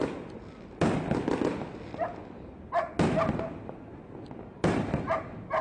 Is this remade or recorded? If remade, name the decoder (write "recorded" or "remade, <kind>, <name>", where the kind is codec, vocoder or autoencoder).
recorded